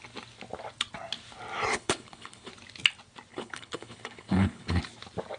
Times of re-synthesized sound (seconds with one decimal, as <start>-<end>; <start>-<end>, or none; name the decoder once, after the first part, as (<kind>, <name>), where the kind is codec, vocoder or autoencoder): 1.7-2.5 (codec, HILCodec); 3.3-4.8